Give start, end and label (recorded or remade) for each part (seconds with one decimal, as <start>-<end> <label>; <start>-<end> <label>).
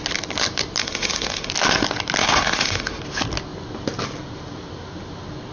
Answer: 0.0-0.8 recorded; 0.8-1.5 remade; 1.5-2.2 recorded; 2.2-3.0 remade; 3.0-5.5 recorded